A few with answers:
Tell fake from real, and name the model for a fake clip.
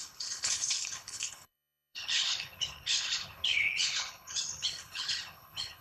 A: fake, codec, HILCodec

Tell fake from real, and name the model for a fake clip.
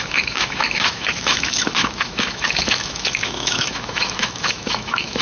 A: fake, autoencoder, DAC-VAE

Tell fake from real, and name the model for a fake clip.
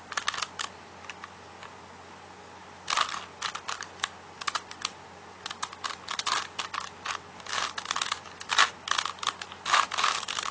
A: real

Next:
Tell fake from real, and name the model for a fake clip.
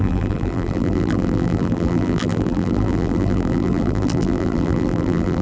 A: fake, vocoder, BigVGAN v2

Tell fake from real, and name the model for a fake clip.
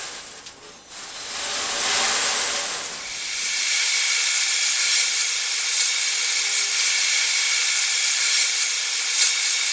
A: real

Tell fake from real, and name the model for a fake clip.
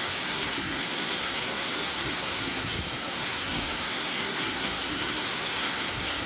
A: fake, codec, SNAC